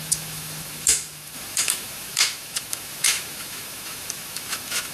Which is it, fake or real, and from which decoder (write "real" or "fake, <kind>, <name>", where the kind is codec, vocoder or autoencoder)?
fake, autoencoder, DAC-VAE